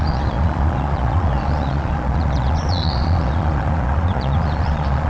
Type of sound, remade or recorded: remade